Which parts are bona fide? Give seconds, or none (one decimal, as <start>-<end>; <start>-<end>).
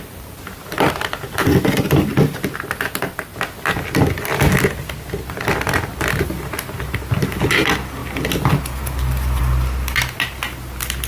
0.0-11.1